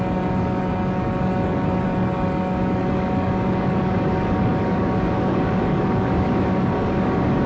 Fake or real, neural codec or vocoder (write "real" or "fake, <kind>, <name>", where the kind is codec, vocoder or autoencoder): fake, codec, DAC